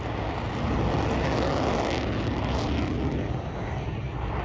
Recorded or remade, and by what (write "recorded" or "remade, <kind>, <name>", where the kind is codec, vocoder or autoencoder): recorded